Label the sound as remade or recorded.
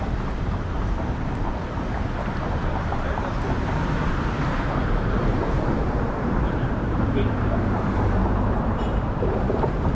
remade